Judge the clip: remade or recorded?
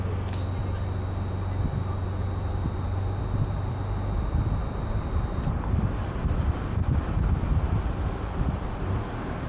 recorded